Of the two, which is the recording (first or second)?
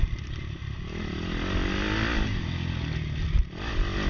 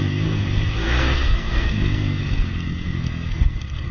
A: first